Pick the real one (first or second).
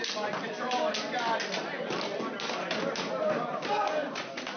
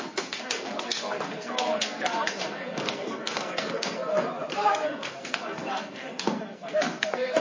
first